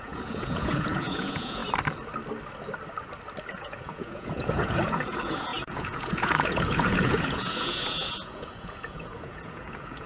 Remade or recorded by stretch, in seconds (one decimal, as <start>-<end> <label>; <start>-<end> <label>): 0.0-1.6 remade; 1.6-3.5 recorded; 3.5-10.1 remade